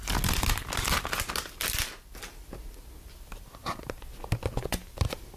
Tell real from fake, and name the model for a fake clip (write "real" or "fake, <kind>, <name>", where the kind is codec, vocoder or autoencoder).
real